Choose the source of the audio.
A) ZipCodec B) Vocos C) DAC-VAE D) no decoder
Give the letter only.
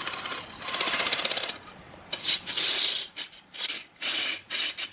D